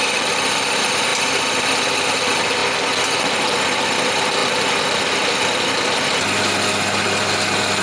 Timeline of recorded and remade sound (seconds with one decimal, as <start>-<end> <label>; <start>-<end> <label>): 0.0-7.8 recorded